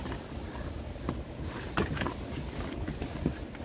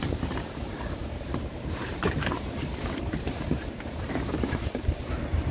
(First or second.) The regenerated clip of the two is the second